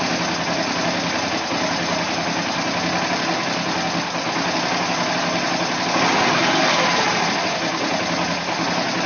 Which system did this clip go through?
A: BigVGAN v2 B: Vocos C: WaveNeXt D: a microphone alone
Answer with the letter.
D